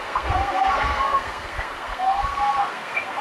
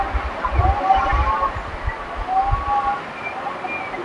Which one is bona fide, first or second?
second